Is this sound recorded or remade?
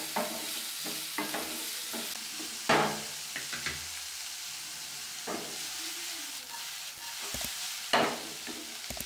recorded